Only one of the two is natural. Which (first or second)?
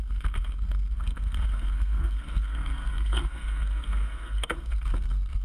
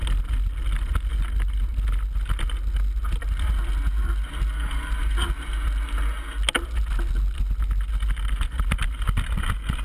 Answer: second